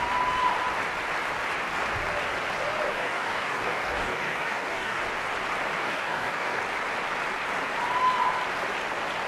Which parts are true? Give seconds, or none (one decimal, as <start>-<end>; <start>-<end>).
0.0-2.9; 5.0-5.8; 6.6-9.3